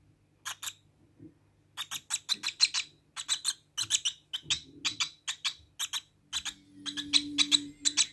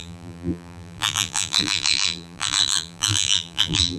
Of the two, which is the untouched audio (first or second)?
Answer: first